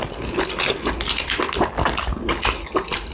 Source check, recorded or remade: recorded